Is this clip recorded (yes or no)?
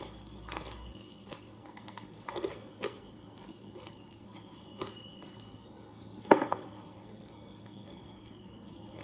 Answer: no